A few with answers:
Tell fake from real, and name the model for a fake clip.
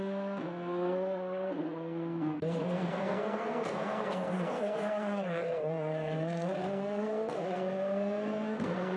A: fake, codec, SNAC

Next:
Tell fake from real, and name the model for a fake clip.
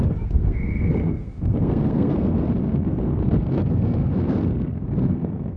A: fake, codec, SNAC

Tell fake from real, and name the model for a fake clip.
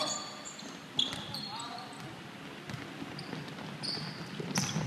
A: real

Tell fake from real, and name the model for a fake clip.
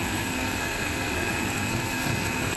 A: fake, codec, SNAC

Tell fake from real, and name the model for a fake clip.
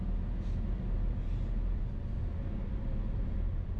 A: real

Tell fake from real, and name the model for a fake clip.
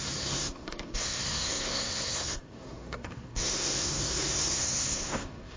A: fake, codec, SNAC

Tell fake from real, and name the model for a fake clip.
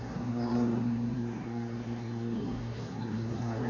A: fake, codec, SNAC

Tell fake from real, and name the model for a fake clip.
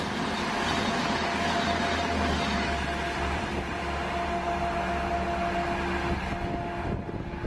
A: real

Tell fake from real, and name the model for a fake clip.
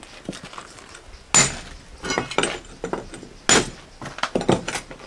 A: real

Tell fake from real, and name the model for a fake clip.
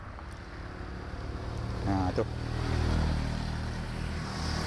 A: real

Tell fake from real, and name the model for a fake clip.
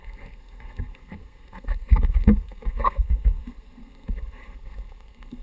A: fake, codec, SNAC